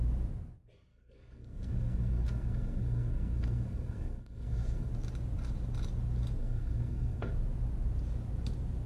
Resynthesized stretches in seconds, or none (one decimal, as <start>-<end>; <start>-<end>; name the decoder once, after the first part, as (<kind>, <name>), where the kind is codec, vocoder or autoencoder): 0.9-4.9 (codec, SNAC); 6.4-7.3